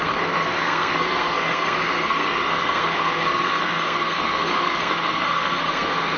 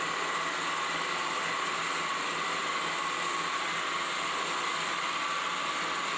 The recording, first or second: second